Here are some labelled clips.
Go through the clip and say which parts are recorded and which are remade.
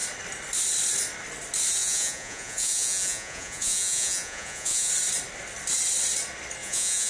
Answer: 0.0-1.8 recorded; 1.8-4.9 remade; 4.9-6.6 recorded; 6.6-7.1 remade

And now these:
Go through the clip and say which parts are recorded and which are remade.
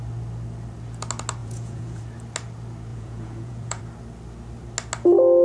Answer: 0.0-1.4 recorded; 1.4-2.0 remade; 2.0-2.9 recorded; 2.9-3.8 remade; 3.8-5.4 recorded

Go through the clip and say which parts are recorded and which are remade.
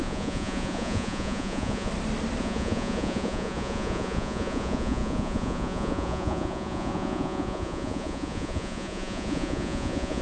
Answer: 0.0-1.9 remade; 1.9-2.4 recorded; 2.4-10.2 remade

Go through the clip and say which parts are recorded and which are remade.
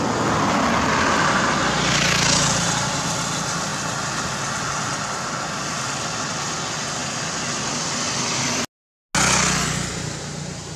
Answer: 0.0-10.8 recorded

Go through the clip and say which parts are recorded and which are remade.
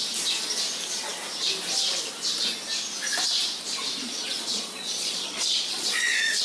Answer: 0.0-4.0 recorded; 4.0-6.4 remade